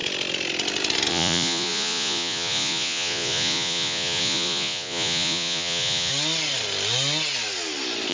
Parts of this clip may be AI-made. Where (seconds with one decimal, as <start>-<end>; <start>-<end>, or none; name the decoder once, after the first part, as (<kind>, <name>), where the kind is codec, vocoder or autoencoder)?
1.1-6.1 (vocoder, Vocos)

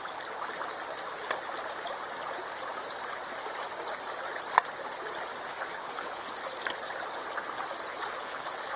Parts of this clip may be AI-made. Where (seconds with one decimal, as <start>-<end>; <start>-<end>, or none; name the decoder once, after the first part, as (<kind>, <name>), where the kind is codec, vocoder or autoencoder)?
5.8-6.3 (codec, HILCodec); 7.9-8.8

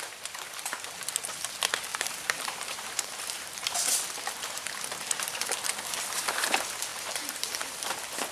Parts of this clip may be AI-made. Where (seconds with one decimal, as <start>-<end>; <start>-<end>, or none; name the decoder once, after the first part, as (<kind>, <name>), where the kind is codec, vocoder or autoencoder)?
1.9-5.5 (vocoder, BigVGAN v2); 6.9-7.9

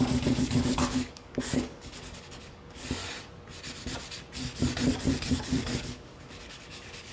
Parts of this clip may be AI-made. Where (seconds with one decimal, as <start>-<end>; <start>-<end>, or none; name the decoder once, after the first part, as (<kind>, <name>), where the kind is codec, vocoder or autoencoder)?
0.0-3.0 (codec, DAC); 5.3-7.1

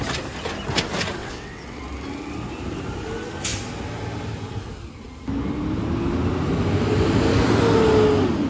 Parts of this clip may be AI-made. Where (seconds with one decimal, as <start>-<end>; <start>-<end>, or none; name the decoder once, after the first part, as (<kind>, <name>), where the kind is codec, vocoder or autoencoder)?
1.2-1.8 (vocoder, WaveNeXt)